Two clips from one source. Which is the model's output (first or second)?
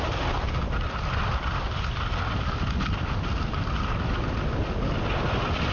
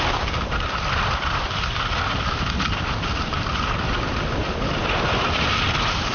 second